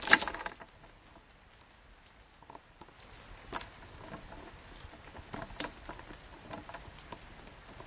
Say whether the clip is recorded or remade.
recorded